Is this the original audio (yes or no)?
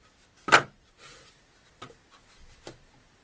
yes